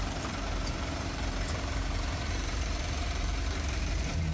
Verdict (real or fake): fake